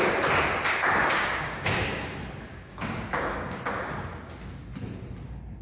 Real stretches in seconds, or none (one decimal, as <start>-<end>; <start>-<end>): 0.0-1.0; 2.0-2.5; 3.6-5.6